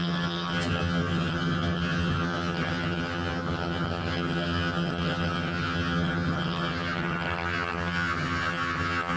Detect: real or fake fake